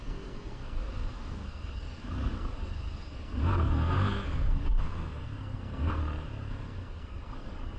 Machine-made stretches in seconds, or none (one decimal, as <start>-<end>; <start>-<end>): 0.0-6.0; 6.5-7.8